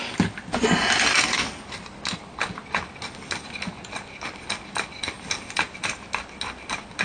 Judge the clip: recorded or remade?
recorded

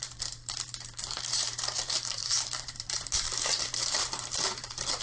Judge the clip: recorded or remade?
remade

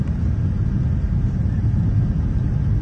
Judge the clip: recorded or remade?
recorded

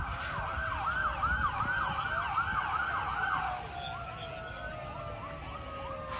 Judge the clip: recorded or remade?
recorded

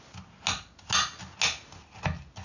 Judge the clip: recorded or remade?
recorded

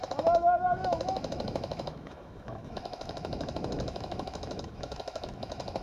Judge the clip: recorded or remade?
remade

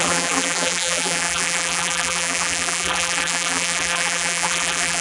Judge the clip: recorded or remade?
remade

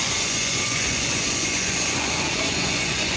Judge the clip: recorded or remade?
remade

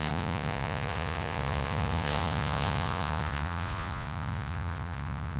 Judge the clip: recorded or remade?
remade